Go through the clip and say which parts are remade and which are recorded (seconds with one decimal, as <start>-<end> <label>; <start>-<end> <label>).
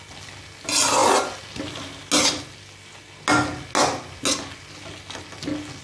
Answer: 0.0-5.8 recorded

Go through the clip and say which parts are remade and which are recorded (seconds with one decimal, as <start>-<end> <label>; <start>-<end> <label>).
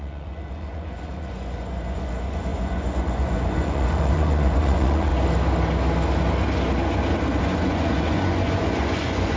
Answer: 0.0-5.1 remade; 5.1-7.4 recorded; 7.4-9.4 remade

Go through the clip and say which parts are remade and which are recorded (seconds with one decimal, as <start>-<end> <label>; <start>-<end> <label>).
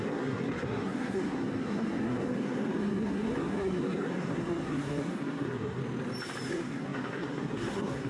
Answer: 0.0-5.8 remade; 5.8-6.5 recorded; 6.5-8.1 remade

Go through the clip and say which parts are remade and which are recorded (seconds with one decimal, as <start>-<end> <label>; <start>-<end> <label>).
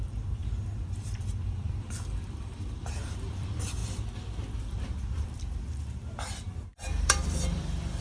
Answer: 0.0-3.8 remade; 3.8-4.6 recorded; 4.6-8.0 remade